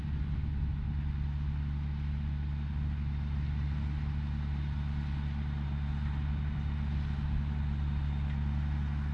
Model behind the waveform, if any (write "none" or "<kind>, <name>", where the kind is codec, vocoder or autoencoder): none